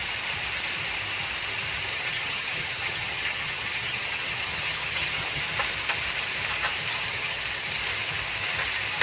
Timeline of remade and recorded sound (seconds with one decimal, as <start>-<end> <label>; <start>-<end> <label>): 0.0-1.9 recorded; 1.9-5.4 remade; 5.4-6.9 recorded; 6.9-7.4 remade; 7.4-9.0 recorded